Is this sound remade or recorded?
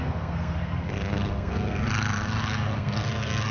remade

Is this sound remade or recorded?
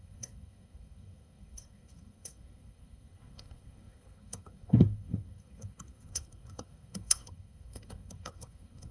remade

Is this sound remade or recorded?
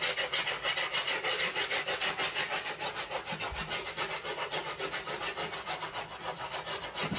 recorded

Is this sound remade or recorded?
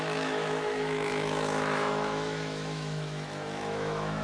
remade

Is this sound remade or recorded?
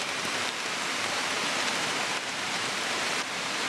remade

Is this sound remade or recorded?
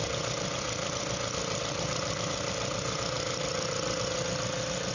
recorded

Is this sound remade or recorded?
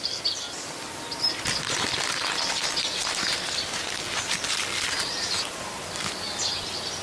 recorded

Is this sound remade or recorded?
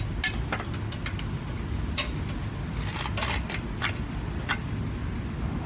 recorded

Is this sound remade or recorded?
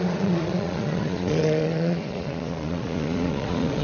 remade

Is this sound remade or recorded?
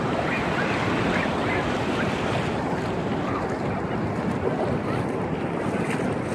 recorded